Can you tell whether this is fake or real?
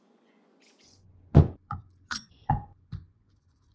fake